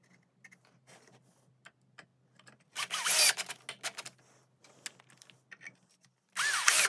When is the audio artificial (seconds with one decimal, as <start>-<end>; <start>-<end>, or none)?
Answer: none